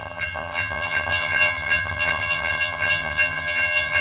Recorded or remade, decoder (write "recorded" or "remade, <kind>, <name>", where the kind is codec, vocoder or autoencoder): remade, vocoder, HiFi-GAN